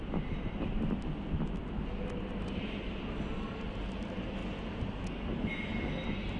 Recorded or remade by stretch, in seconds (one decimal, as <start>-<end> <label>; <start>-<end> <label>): 0.0-6.4 recorded